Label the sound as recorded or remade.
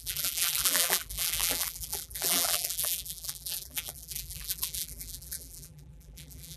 remade